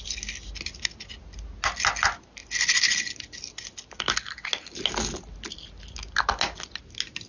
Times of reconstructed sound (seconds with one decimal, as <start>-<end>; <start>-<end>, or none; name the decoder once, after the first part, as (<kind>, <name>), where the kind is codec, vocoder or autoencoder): none